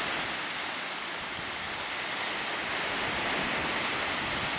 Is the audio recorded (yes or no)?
yes